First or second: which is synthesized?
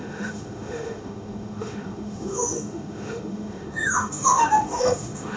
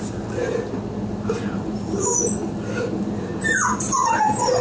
first